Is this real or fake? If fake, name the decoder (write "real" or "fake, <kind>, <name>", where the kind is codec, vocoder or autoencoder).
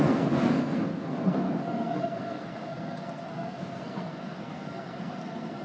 fake, codec, SNAC